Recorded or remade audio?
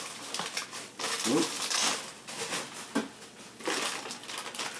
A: recorded